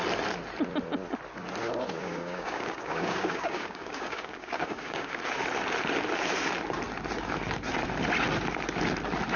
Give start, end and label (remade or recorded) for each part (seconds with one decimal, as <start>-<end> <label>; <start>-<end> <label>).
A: 0.0-2.0 recorded; 2.0-5.2 remade; 5.2-9.4 recorded